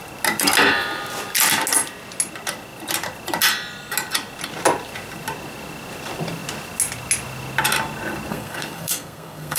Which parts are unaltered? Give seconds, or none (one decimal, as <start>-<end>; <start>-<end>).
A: 0.0-8.3